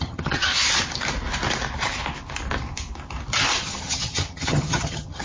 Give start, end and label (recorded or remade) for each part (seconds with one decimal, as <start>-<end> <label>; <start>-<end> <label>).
0.0-0.5 remade; 0.5-3.6 recorded; 3.6-5.2 remade